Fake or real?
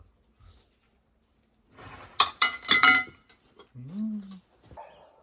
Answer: real